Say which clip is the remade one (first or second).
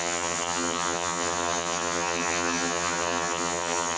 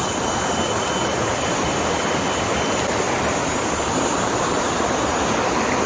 first